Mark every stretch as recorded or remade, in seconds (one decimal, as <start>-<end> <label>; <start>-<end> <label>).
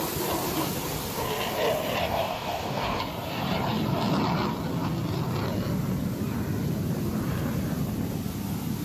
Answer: 0.0-2.0 recorded; 2.0-3.0 remade; 3.0-8.8 recorded